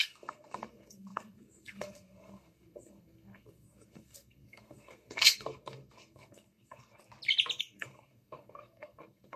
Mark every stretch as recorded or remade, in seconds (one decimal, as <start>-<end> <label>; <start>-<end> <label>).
0.0-7.0 remade; 7.0-7.6 recorded; 7.6-9.4 remade